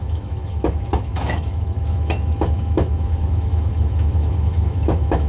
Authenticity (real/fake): fake